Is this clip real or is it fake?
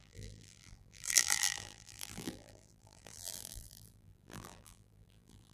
fake